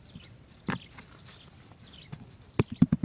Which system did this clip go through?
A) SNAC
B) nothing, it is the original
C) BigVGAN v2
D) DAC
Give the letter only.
C